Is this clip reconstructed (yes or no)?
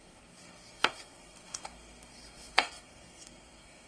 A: yes